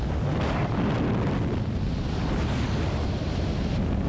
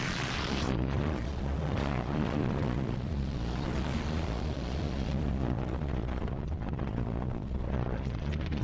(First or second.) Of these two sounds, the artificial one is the second